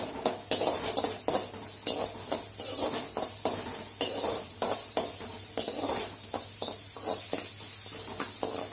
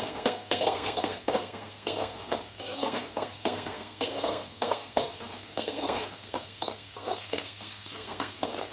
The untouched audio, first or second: first